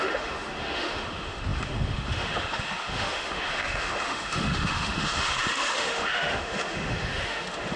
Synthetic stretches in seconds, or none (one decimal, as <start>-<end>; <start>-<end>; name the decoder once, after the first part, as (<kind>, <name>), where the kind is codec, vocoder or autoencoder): 0.0-7.8 (autoencoder, DAC-VAE)